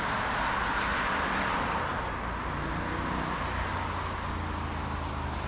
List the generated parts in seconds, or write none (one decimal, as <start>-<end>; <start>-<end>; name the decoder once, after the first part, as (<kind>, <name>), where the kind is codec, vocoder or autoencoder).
none